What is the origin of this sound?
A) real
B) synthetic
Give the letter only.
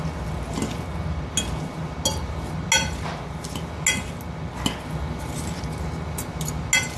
A